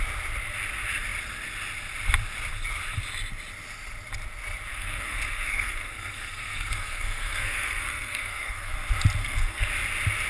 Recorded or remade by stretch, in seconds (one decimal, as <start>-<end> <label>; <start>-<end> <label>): 0.0-4.7 recorded; 4.7-8.7 remade; 8.7-9.2 recorded; 9.2-9.7 remade; 9.7-10.3 recorded